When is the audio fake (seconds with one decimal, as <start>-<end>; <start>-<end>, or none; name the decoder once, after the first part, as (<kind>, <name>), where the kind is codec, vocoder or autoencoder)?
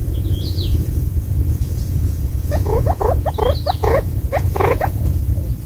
0.0-3.3 (vocoder, Vocos); 3.8-5.2